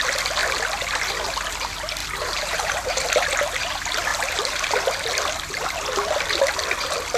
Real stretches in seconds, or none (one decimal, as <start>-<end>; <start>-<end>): 0.0-2.0; 3.1-4.1; 4.7-7.2